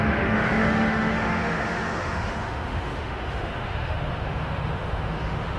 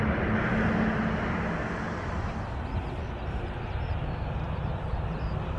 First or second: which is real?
second